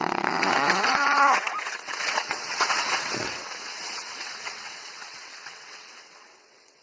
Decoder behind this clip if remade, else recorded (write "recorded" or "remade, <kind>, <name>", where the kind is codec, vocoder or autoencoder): remade, vocoder, WaveNeXt